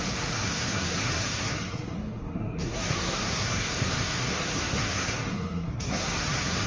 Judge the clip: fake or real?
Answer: fake